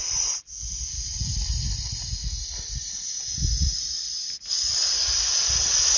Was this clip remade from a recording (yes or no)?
no